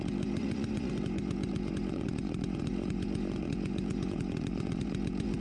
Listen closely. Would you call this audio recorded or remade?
remade